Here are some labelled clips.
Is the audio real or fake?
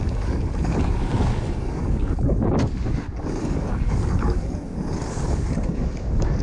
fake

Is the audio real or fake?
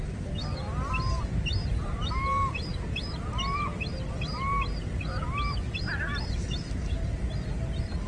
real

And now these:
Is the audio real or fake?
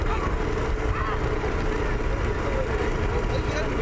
real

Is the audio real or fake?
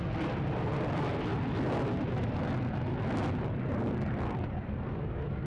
real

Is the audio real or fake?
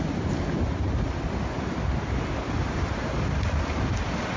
real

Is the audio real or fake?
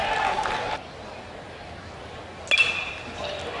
real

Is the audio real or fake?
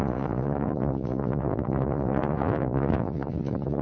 fake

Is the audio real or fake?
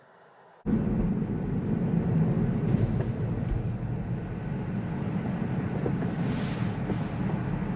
real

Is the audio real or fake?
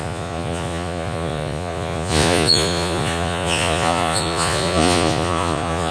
fake